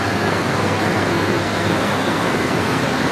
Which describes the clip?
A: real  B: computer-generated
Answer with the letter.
B